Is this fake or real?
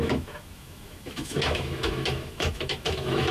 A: fake